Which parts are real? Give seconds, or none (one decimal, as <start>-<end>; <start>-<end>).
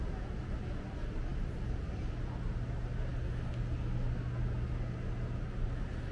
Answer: 0.0-6.1